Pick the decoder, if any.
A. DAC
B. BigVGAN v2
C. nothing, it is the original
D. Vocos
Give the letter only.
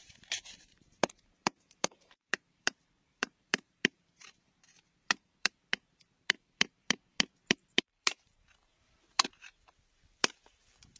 B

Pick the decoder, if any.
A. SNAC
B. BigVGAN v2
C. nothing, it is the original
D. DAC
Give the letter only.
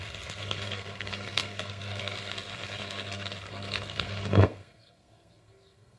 A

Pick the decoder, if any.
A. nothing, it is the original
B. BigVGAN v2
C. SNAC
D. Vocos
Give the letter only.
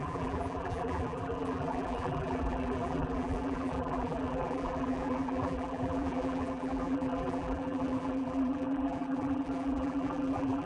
B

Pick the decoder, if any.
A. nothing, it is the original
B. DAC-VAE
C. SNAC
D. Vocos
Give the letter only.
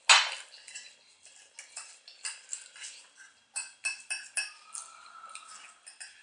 A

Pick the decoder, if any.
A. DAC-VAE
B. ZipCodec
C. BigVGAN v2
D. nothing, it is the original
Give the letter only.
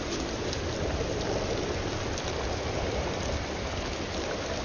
C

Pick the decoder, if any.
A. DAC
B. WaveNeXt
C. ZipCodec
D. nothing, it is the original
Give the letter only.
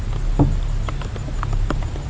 D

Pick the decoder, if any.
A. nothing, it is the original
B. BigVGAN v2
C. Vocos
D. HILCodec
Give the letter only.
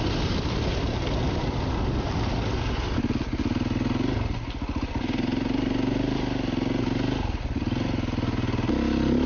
A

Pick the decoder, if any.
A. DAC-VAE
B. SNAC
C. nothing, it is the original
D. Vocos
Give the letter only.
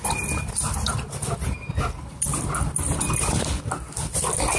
C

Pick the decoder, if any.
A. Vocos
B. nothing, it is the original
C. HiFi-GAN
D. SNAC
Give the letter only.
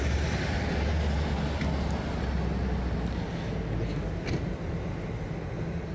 B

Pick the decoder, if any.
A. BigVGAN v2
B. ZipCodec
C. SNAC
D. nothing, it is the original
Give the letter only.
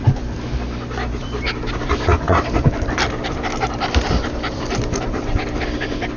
A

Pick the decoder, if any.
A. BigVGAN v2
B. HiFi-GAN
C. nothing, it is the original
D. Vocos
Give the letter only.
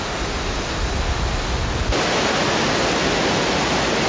C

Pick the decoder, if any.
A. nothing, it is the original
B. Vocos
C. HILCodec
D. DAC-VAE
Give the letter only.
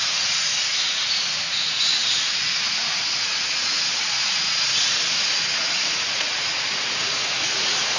B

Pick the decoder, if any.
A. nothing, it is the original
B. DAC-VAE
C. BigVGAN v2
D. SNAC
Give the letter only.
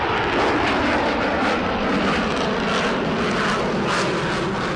A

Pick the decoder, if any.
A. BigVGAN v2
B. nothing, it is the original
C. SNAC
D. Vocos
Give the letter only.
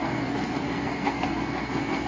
C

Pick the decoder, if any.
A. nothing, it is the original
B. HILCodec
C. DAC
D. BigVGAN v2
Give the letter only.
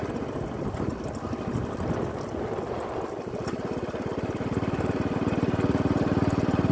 A